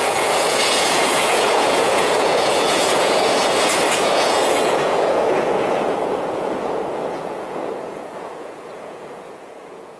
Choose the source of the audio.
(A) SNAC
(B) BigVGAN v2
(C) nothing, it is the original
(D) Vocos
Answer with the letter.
D